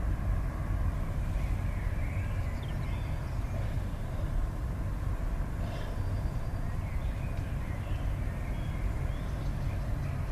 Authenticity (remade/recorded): recorded